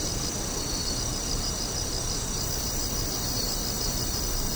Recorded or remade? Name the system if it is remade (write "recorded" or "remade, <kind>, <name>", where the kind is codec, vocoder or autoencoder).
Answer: remade, vocoder, BigVGAN v2